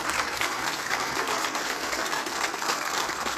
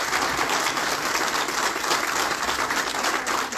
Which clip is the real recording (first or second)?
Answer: second